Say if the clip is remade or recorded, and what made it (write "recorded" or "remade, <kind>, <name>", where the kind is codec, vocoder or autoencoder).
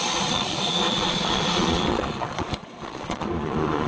remade, vocoder, Vocos